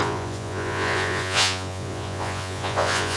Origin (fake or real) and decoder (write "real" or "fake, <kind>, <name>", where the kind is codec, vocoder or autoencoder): fake, vocoder, Vocos